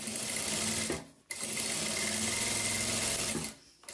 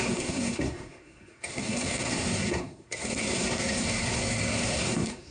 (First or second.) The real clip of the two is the first